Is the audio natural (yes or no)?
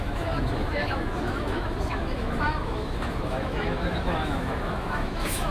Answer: no